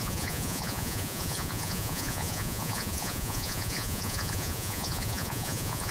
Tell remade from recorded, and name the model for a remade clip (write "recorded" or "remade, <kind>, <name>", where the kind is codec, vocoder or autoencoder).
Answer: remade, vocoder, Vocos